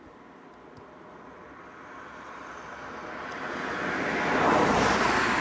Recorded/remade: recorded